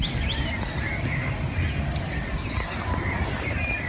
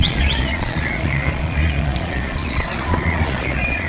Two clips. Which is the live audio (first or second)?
first